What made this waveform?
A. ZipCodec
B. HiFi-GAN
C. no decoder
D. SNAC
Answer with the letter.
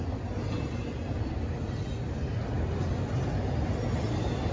C